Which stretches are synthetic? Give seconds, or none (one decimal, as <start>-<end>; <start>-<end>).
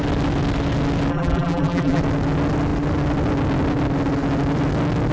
1.1-2.0